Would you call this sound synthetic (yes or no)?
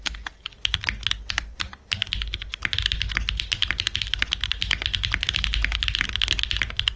no